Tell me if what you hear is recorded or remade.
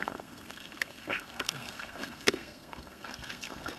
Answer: remade